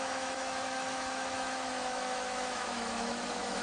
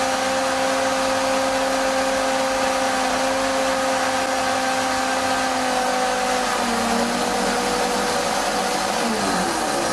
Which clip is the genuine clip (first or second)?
second